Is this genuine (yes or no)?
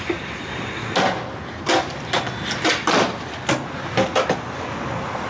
yes